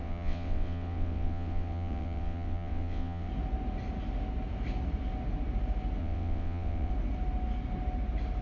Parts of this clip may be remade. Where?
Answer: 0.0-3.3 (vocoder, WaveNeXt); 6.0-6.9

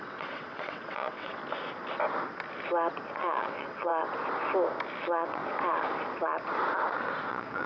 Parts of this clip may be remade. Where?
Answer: 0.0-1.4 (vocoder, WaveNeXt); 3.1-3.9; 5.0-5.4; 7.3-7.7

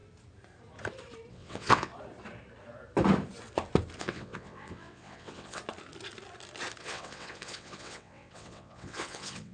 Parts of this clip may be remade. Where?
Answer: 1.3-1.9 (vocoder, WaveNeXt); 4.0-5.6; 6.8-9.5

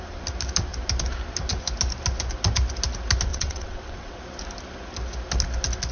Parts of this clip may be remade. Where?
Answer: 3.3-4.2 (vocoder, WaveNeXt)

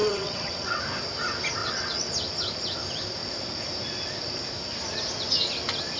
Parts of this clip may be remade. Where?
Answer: 0.0-0.8 (vocoder, WaveNeXt); 1.6-2.1

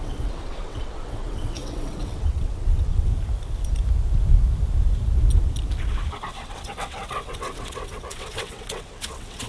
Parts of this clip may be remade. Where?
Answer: 0.0-3.1 (vocoder, WaveNeXt); 6.3-9.5

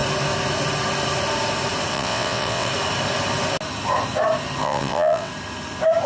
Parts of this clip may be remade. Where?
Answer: 1.9-2.7 (vocoder, WaveNeXt); 4.6-5.3